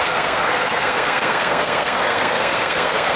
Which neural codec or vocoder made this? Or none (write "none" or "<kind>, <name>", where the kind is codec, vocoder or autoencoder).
codec, SNAC